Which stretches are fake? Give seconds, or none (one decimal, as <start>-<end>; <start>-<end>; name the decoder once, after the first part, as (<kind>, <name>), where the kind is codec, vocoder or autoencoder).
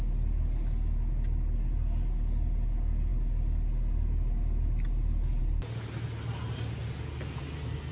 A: 6.8-7.4 (vocoder, BigVGAN v2)